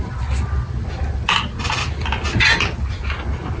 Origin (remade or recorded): recorded